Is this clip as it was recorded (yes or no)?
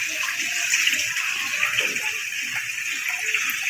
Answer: yes